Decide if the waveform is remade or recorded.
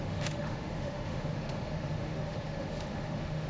remade